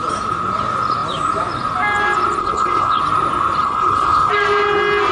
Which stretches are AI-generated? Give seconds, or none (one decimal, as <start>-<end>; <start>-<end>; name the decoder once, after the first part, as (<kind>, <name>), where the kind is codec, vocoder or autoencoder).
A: 2.4-3.0 (codec, HILCodec); 3.6-4.3